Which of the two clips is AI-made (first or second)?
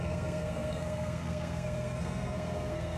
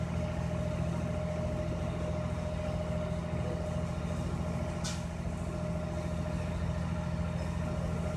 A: first